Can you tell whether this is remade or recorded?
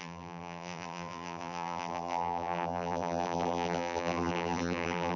remade